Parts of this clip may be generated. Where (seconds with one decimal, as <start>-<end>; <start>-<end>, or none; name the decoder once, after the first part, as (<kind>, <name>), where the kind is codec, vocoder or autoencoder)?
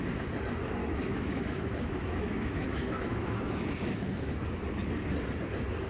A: 0.8-4.3 (autoencoder, DAC-VAE)